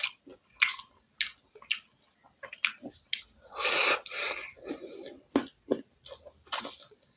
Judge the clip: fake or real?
real